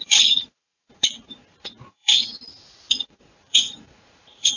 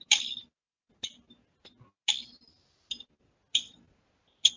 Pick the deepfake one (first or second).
first